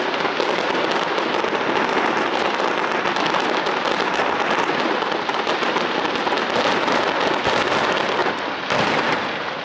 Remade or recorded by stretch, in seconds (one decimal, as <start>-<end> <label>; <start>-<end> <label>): 0.0-9.6 recorded